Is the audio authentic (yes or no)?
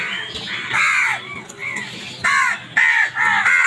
yes